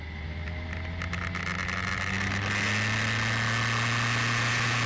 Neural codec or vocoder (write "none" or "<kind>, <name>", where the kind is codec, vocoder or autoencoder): none